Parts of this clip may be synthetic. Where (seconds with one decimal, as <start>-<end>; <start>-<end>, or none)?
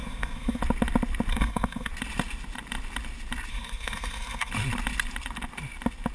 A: 0.0-0.6; 1.3-1.9; 3.5-4.5